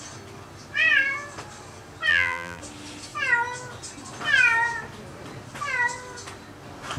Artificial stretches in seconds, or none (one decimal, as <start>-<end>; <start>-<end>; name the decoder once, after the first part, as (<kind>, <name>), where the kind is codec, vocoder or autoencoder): 2.1-2.6 (vocoder, BigVGAN v2)